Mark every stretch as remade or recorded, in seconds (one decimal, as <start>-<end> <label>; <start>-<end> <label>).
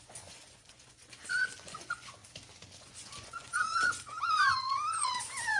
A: 0.0-2.2 remade; 2.2-2.8 recorded; 2.8-5.6 remade